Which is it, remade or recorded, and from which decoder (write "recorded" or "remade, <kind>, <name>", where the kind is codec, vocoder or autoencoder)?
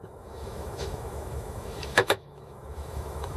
remade, autoencoder, DAC-VAE